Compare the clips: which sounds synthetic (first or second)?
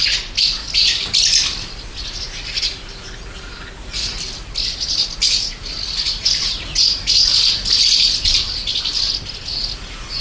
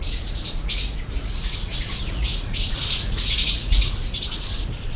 second